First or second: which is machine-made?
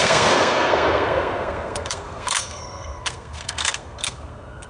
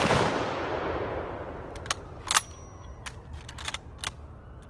first